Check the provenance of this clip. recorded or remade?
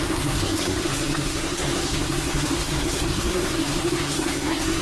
remade